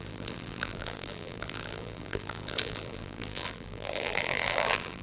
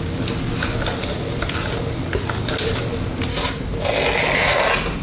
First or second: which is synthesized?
first